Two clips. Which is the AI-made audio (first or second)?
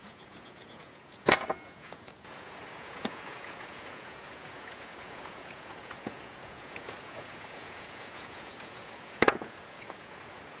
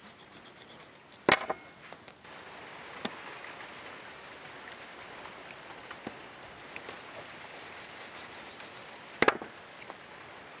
first